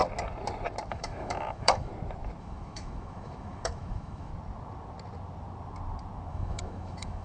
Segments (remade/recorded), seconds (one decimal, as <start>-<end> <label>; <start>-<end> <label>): 0.0-0.9 recorded; 0.9-1.9 remade; 1.9-2.4 recorded; 2.4-4.3 remade; 4.3-6.3 recorded; 6.3-7.2 remade